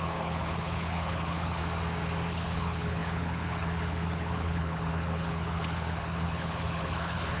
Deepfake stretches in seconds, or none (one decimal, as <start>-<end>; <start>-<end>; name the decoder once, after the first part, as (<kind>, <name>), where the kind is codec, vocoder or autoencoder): 0.0-1.6 (codec, HILCodec); 2.3-7.4